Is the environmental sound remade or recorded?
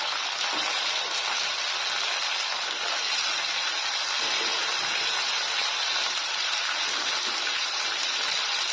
recorded